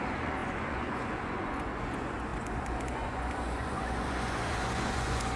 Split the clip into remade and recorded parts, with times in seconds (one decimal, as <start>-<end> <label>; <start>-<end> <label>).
0.0-5.4 remade